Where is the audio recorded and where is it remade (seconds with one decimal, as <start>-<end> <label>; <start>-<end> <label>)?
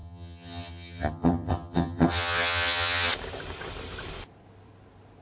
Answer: 0.0-3.1 remade; 3.1-5.2 recorded